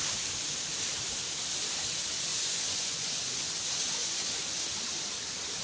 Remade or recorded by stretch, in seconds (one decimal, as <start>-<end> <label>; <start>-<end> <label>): 0.0-2.3 recorded; 2.3-3.5 remade; 3.5-4.0 recorded; 4.0-4.6 remade; 4.6-5.6 recorded